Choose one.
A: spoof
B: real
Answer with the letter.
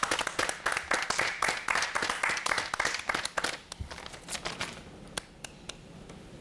B